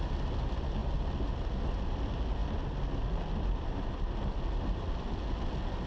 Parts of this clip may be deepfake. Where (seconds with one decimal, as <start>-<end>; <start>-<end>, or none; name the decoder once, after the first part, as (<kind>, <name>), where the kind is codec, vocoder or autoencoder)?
none